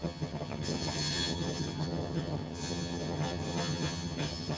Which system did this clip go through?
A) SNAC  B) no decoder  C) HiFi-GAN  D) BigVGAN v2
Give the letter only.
C